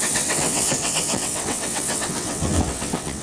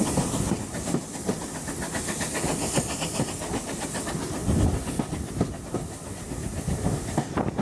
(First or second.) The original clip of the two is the second